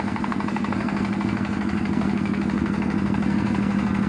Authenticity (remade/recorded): remade